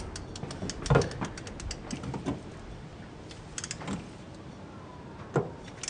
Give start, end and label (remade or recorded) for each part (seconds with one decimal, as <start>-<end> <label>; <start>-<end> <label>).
0.0-5.9 recorded